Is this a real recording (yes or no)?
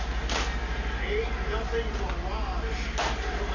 yes